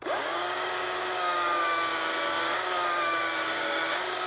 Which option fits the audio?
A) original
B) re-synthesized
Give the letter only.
B